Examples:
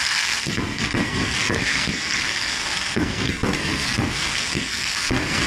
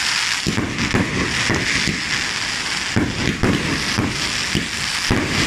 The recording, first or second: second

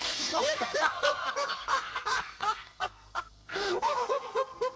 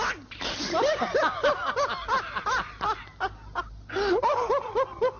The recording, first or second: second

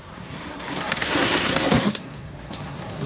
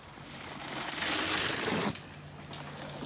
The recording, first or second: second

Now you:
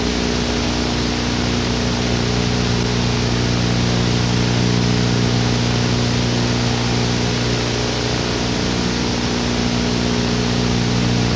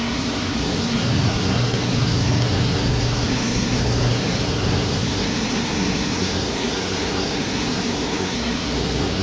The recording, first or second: first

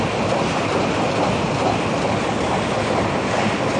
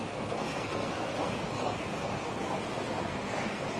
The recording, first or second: first